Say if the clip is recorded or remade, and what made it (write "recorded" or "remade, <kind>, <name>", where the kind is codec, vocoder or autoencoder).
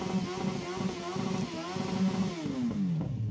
recorded